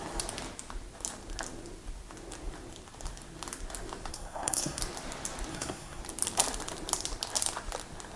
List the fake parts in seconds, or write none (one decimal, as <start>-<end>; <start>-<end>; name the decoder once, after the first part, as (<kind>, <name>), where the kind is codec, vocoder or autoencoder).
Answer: 4.1-4.8 (codec, SNAC); 5.5-6.0